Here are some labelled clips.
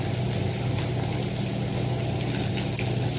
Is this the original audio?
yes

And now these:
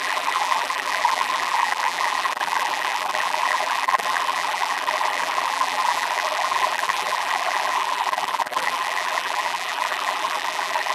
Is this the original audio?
no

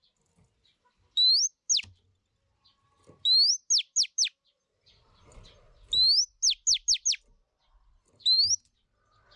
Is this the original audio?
yes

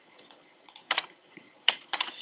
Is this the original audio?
no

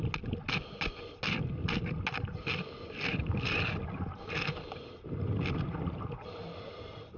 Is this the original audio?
yes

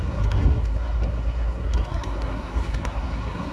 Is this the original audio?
no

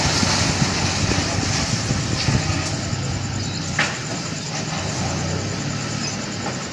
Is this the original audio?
yes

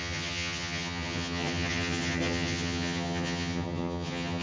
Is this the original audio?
no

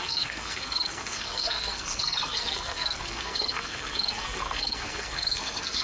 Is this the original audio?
no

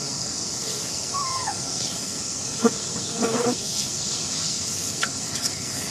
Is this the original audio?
no